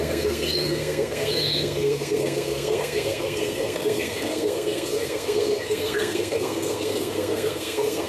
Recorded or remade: remade